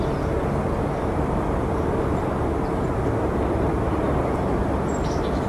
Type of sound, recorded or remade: recorded